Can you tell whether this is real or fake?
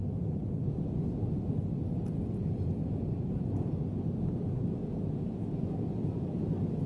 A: real